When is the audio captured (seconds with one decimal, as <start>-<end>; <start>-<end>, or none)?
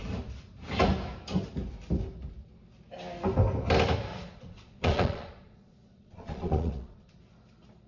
0.0-4.1; 7.2-7.9